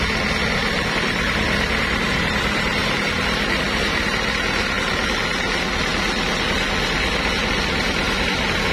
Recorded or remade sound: recorded